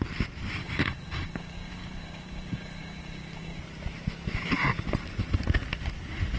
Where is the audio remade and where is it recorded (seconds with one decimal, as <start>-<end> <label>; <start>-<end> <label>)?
0.0-0.6 recorded; 0.6-3.6 remade; 3.6-6.4 recorded